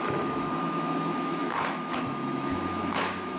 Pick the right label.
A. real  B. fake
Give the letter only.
B